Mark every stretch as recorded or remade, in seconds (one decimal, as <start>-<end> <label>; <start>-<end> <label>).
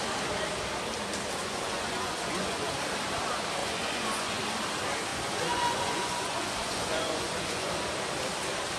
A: 0.0-1.4 recorded; 1.4-2.7 remade; 2.7-3.6 recorded; 3.6-4.4 remade; 4.4-5.1 recorded; 5.1-7.7 remade; 7.7-8.8 recorded